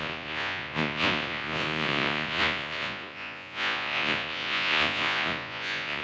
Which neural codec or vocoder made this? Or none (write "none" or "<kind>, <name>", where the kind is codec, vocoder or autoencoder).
vocoder, Vocos